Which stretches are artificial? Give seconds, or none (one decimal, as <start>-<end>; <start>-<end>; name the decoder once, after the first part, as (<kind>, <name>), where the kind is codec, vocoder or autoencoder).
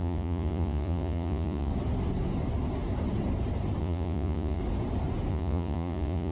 0.0-1.7 (vocoder, Vocos); 3.8-4.6; 5.3-6.3